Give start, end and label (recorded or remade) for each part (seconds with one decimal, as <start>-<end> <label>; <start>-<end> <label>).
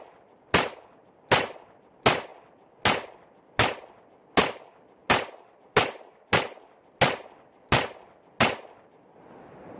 0.0-9.8 recorded